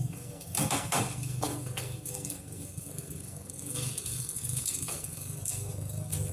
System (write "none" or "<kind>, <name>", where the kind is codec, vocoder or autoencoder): codec, SNAC